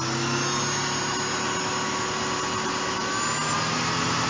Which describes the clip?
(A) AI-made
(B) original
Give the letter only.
B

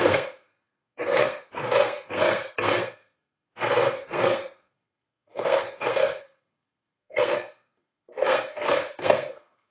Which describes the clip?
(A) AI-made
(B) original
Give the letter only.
A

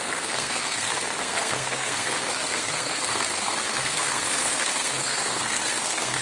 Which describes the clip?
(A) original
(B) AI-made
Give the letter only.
B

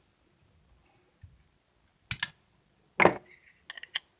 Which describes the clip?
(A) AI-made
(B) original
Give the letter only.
B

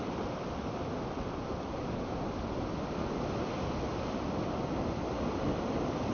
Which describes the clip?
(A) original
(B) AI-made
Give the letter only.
A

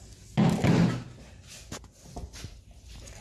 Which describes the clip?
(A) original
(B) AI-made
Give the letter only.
A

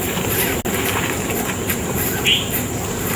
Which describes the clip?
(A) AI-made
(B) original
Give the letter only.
B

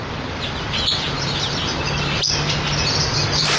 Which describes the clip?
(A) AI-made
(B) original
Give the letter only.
B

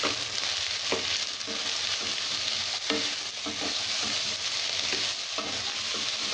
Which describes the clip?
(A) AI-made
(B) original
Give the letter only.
B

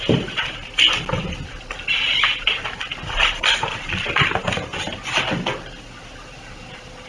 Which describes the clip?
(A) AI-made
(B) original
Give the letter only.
B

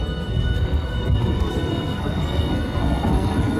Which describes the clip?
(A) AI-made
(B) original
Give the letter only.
A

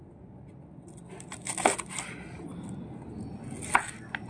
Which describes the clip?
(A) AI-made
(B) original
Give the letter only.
B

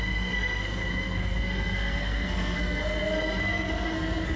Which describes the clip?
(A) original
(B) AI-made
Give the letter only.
B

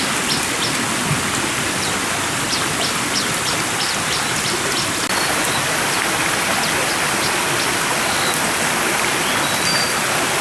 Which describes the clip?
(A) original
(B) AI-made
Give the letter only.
A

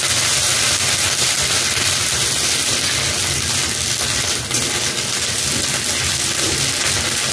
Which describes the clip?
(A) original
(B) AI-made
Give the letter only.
A